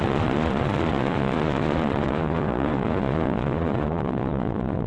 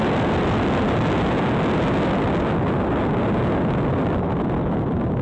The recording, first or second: second